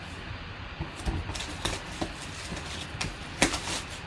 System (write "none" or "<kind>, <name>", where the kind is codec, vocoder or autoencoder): none